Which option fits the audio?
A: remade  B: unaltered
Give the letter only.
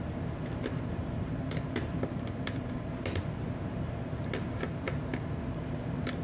A